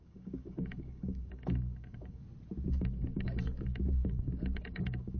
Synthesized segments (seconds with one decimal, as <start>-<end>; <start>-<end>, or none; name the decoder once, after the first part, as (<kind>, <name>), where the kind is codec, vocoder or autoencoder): 0.0-2.2 (codec, DAC); 2.7-5.2